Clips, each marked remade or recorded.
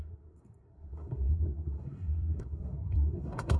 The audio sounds remade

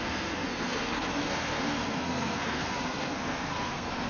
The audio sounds remade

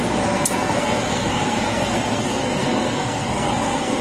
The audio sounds remade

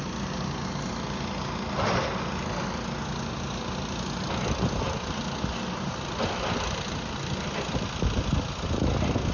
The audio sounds recorded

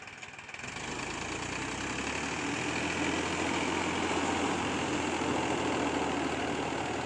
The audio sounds recorded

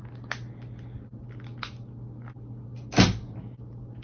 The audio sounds recorded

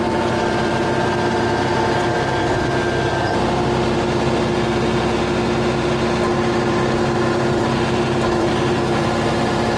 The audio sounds recorded